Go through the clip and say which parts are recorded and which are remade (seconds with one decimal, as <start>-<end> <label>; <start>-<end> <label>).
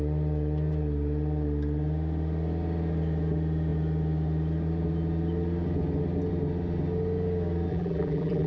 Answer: 0.0-7.7 recorded; 7.7-8.5 remade